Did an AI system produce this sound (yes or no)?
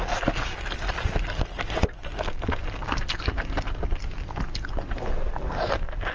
no